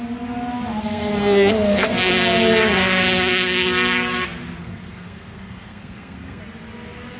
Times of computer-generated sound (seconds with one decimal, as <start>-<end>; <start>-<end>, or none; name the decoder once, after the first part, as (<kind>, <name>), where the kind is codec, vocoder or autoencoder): 0.8-2.1 (codec, SNAC); 4.6-6.4